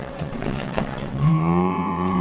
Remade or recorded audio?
remade